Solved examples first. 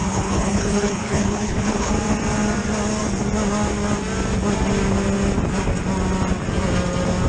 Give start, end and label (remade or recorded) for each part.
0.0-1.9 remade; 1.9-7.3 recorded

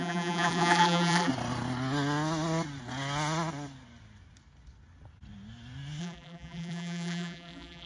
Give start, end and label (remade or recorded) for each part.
0.0-1.3 remade; 1.3-6.0 recorded; 6.0-7.9 remade

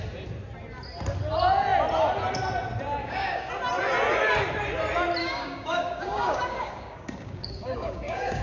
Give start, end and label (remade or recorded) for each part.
0.0-3.0 recorded; 3.0-3.5 remade; 3.5-5.2 recorded; 5.2-8.4 remade

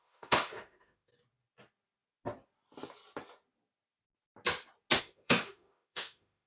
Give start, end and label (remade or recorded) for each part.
0.0-1.1 remade; 1.1-5.0 recorded; 5.0-6.5 remade

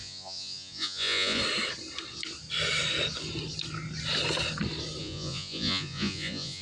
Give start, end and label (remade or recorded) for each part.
0.0-1.4 remade; 1.4-5.0 recorded; 5.0-6.6 remade